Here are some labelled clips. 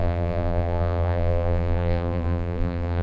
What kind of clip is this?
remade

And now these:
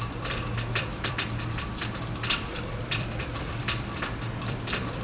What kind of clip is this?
remade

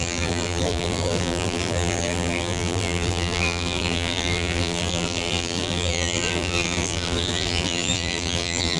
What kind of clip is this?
remade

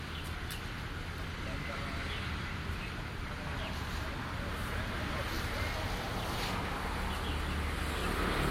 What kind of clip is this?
recorded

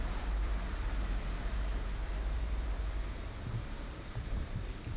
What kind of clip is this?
remade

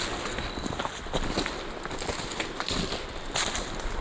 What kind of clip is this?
remade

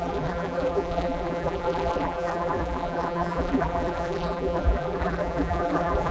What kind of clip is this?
remade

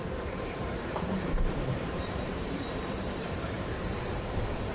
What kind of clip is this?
remade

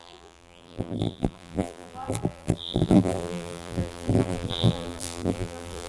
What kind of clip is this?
remade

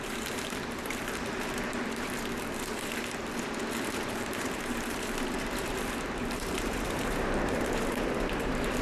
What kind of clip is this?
remade